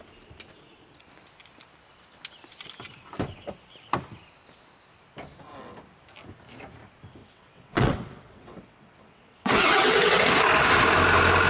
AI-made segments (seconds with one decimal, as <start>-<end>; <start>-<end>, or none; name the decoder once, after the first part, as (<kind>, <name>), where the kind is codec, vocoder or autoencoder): 7.2-10.3 (vocoder, WaveNeXt)